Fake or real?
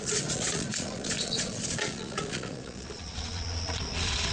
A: fake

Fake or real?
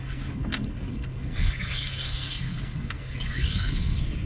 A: fake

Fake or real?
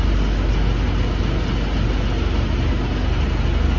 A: real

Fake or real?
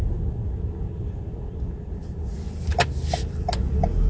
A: real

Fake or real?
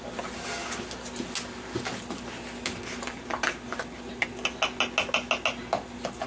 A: real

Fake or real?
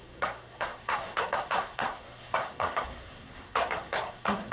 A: fake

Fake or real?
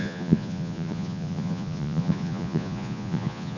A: fake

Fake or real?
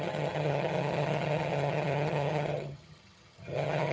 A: fake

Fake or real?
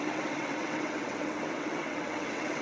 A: fake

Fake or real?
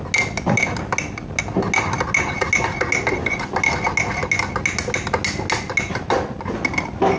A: real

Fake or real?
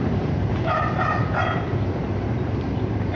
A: fake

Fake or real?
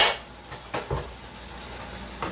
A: real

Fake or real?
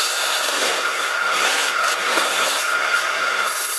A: fake